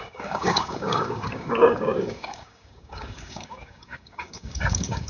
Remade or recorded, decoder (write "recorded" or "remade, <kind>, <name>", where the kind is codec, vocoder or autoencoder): remade, codec, DAC